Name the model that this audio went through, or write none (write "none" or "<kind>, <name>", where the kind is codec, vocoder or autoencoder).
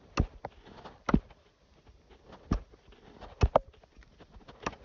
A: none